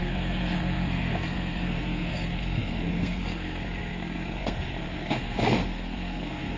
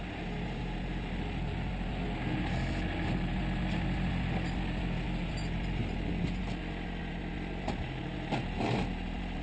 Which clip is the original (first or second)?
second